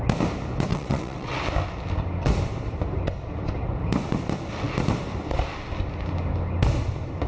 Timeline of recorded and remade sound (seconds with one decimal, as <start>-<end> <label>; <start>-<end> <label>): 0.0-0.7 recorded; 0.7-1.4 remade; 1.4-7.3 recorded